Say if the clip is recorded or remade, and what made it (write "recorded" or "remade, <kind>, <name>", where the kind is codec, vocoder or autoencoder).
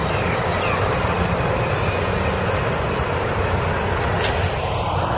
recorded